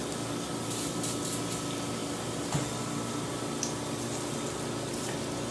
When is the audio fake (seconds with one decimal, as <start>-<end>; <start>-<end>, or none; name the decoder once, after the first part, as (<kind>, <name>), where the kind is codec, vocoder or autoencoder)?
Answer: none